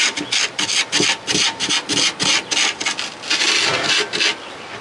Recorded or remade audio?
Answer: recorded